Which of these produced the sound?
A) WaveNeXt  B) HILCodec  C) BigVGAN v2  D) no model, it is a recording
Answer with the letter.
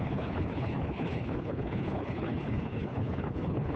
B